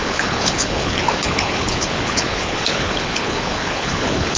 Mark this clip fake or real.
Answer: fake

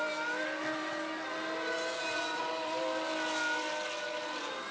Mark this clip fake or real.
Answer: real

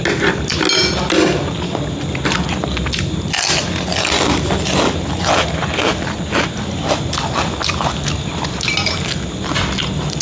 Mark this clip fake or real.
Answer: real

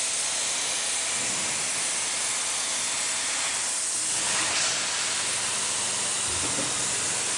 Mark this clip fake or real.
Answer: real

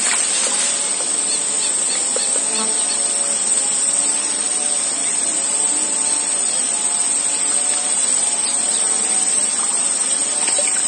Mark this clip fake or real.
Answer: real